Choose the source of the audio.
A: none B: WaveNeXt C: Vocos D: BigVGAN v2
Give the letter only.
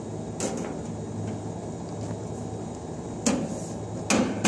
A